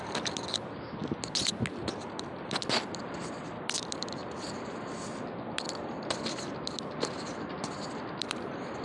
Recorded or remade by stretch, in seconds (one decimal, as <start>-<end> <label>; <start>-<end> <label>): 0.0-8.8 recorded